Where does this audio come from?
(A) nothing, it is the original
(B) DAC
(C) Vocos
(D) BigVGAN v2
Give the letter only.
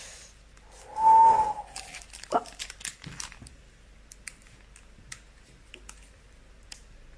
A